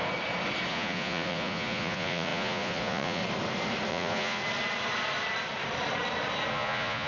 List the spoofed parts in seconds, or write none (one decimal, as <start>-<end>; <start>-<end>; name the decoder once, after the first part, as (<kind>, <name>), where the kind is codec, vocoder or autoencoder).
0.7-3.2 (vocoder, Vocos); 3.9-4.4; 6.5-7.1